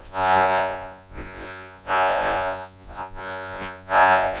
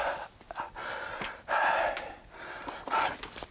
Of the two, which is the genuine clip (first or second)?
second